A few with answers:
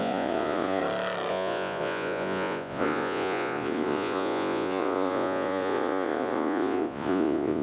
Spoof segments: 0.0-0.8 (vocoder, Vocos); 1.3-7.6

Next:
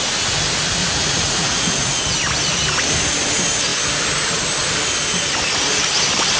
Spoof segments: 0.8-2.1 (vocoder, Vocos)

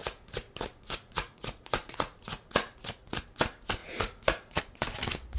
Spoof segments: 0.0-3.2 (vocoder, Vocos); 3.8-4.6

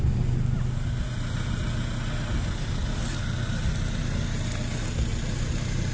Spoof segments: none

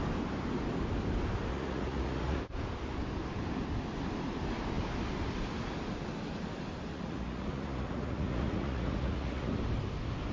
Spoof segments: 1.5-2.4 (vocoder, Vocos); 6.9-9.6

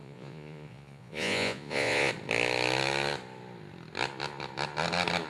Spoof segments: 0.0-2.1 (vocoder, Vocos)